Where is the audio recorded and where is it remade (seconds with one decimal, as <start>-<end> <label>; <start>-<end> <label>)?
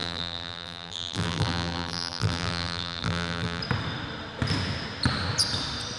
0.0-3.6 remade; 3.6-6.0 recorded